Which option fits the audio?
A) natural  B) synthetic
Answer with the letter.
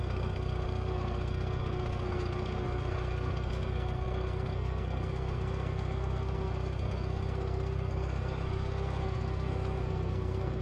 B